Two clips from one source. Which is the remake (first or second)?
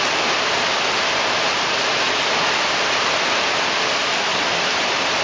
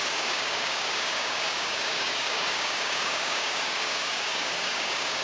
second